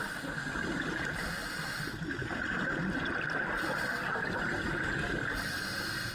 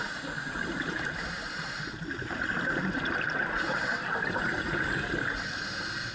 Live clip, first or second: first